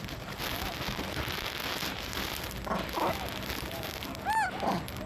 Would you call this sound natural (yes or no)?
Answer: yes